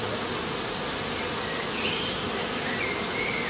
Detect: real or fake real